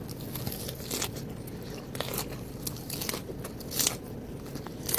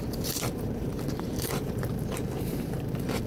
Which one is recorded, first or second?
first